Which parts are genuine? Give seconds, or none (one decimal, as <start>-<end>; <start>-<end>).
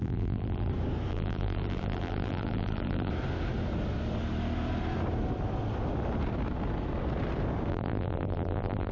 0.7-1.1; 3.1-7.7